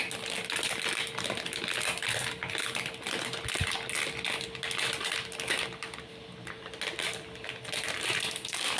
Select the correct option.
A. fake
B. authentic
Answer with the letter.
B